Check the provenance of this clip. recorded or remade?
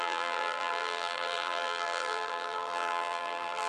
remade